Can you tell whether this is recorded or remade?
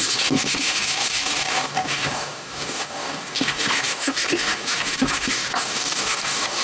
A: remade